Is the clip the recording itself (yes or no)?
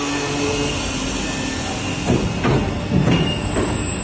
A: yes